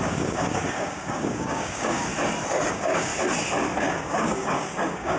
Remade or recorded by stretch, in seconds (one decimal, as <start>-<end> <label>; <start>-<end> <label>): 0.0-2.1 remade; 2.1-2.7 recorded; 2.7-3.1 remade; 3.1-3.8 recorded; 3.8-5.2 remade